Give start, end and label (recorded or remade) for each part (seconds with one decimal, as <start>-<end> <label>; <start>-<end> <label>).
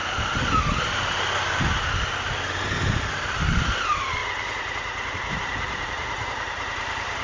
0.0-3.1 recorded; 3.1-4.2 remade; 4.2-5.3 recorded; 5.3-7.2 remade